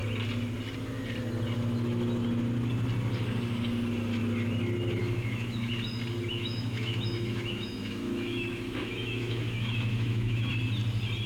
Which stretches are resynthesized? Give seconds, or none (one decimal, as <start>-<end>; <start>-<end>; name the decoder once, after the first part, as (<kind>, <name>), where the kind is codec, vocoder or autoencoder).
5.0-5.7 (autoencoder, DAC-VAE); 6.3-10.5